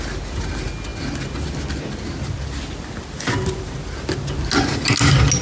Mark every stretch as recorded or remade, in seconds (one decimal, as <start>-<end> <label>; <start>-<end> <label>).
0.0-5.4 recorded